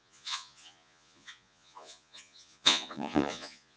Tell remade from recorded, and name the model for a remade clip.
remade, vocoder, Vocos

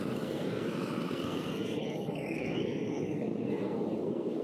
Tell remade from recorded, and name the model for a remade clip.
remade, codec, SNAC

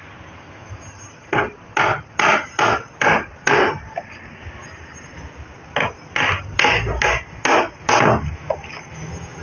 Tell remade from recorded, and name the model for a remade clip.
recorded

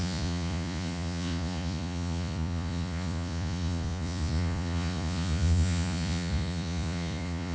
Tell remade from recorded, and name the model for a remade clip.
remade, vocoder, Vocos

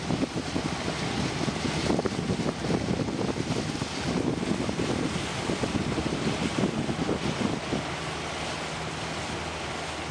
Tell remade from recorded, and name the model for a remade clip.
recorded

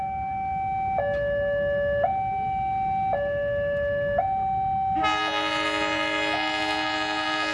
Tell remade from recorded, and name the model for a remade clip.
recorded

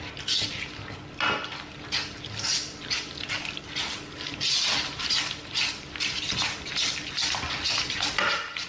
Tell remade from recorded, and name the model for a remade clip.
recorded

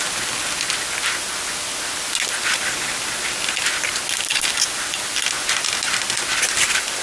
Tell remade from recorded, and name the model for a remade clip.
recorded